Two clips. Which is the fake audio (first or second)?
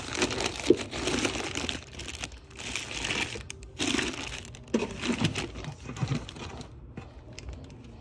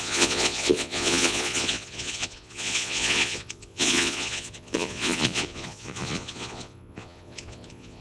second